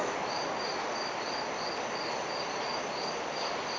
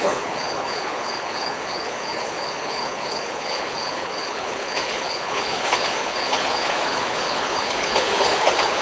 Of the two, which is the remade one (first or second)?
second